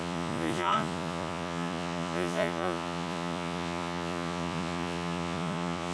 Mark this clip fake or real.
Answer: fake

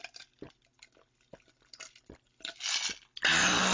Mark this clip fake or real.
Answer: real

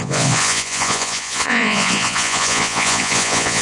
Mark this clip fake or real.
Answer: fake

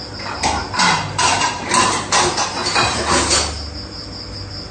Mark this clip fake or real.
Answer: real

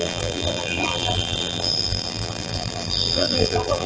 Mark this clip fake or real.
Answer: fake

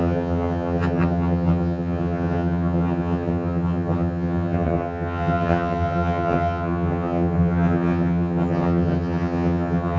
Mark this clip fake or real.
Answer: fake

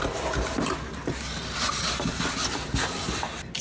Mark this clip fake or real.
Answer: real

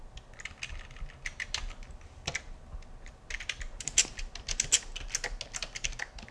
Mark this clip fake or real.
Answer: real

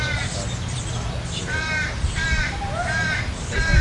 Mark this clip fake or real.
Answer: real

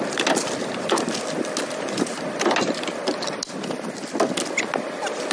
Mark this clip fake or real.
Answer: real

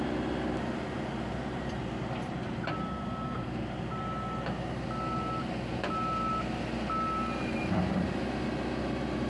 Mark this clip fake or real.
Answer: real